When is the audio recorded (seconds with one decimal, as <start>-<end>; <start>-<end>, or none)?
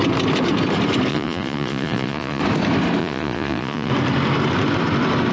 0.0-1.1; 2.4-3.0; 3.9-5.3